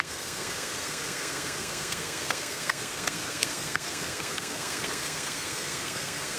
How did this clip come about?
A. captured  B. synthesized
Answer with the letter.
B